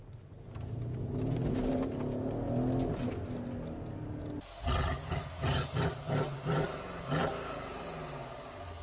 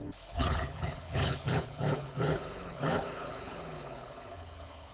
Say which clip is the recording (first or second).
first